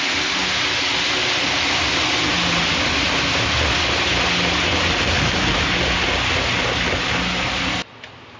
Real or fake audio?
real